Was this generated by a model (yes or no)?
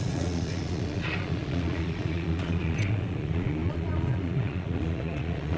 yes